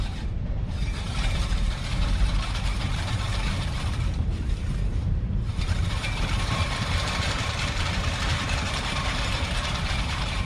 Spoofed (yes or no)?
yes